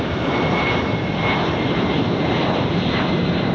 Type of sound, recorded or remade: remade